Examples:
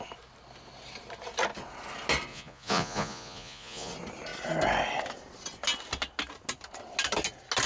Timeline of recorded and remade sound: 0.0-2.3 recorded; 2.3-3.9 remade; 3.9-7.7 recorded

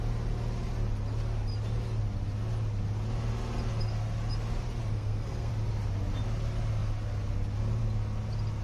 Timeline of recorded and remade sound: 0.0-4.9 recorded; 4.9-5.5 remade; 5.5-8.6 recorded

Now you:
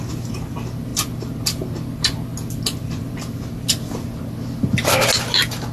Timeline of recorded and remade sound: 0.0-5.7 recorded